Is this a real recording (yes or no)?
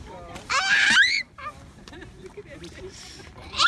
no